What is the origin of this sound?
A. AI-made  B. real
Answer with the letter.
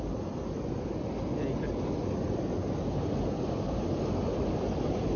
B